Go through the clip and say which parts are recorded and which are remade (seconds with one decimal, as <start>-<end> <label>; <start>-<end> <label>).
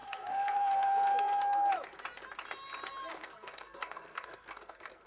0.0-1.7 remade; 1.7-3.1 recorded; 3.1-5.1 remade